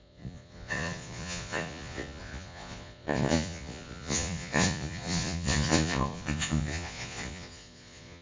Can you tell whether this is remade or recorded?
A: remade